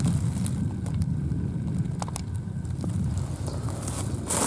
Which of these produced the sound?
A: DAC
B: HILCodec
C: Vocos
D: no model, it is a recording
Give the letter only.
D